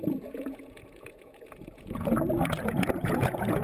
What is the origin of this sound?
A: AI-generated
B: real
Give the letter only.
A